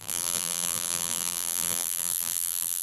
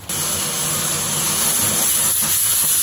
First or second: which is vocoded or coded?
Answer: first